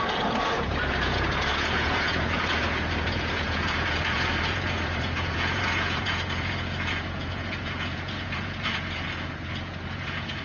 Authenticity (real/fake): fake